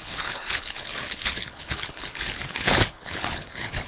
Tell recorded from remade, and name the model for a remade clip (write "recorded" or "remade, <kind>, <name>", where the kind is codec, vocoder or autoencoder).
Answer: remade, codec, HILCodec